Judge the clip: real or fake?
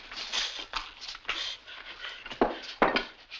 real